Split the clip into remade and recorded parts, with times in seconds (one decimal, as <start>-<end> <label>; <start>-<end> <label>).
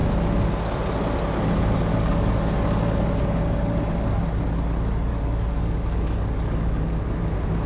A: 0.0-1.9 recorded; 1.9-4.2 remade; 4.2-5.1 recorded; 5.1-7.2 remade; 7.2-7.7 recorded